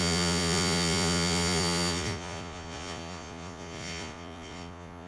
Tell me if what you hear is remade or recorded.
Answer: remade